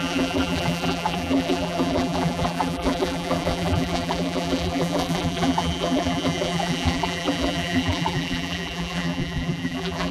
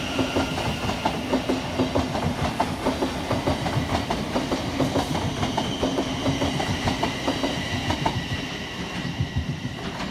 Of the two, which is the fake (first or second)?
first